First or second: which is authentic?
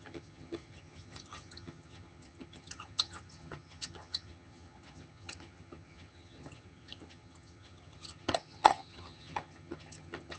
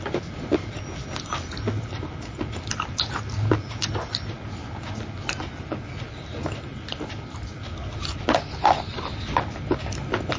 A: second